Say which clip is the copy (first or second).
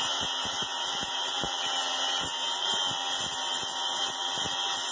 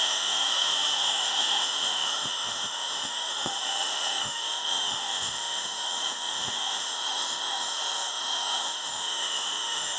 second